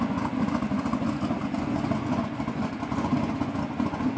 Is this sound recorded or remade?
remade